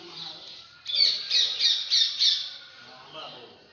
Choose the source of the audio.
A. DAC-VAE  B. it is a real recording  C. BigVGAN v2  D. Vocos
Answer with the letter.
C